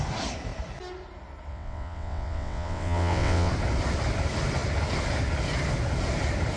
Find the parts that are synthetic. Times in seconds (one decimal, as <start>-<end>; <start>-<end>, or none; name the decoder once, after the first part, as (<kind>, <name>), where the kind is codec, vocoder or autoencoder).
1.5-3.5 (vocoder, WaveNeXt)